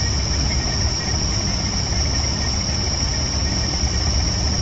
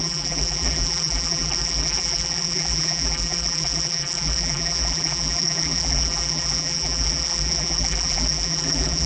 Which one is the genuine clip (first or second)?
first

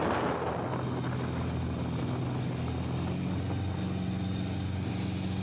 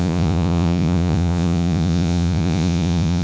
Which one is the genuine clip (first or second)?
first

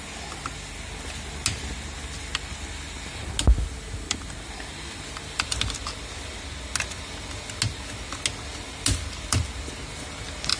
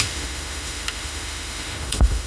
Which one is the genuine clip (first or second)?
first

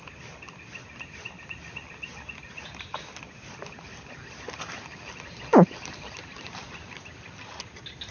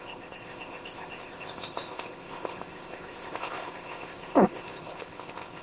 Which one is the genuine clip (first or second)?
first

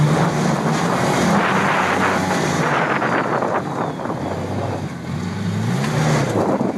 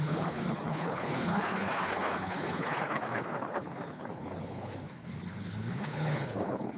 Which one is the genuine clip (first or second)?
first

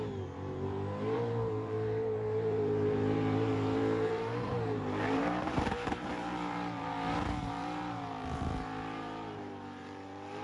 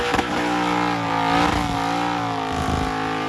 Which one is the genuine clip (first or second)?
second